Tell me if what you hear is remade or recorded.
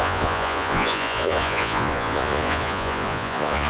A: remade